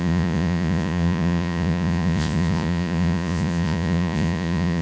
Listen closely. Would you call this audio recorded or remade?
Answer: remade